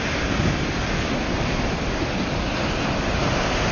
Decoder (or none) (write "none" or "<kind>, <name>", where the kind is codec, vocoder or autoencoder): none